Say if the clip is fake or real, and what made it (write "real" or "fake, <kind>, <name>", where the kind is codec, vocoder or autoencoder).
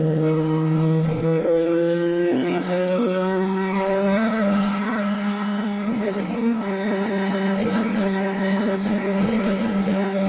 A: fake, codec, SNAC